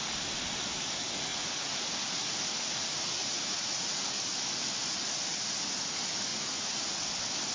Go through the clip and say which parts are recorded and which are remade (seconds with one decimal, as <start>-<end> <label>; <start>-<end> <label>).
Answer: 0.0-1.3 recorded; 1.3-1.9 remade; 1.9-3.2 recorded; 3.2-4.0 remade; 4.0-6.3 recorded; 6.3-7.0 remade; 7.0-7.5 recorded